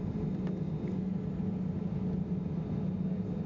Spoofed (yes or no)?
no